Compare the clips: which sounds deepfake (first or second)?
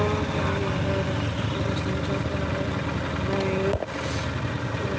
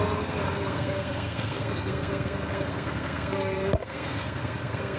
second